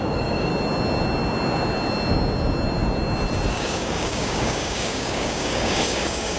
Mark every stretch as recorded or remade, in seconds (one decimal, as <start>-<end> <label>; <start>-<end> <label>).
0.0-0.5 remade; 0.5-3.5 recorded; 3.5-6.4 remade

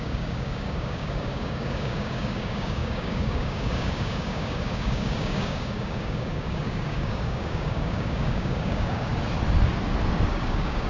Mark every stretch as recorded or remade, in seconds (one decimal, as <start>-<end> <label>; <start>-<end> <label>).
0.0-9.1 remade; 9.1-10.3 recorded; 10.3-10.9 remade